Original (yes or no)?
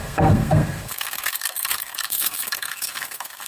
no